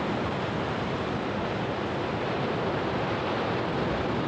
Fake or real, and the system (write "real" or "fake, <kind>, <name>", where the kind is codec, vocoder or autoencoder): real